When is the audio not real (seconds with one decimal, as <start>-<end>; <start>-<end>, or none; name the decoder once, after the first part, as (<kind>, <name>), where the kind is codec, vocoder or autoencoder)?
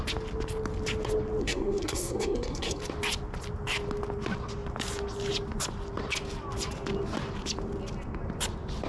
1.4-2.8 (codec, SNAC)